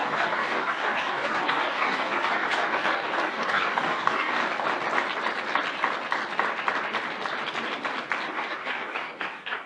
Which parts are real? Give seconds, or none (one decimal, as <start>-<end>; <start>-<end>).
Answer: 4.4-8.3